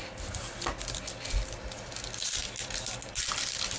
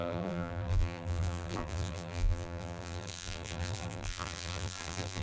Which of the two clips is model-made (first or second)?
second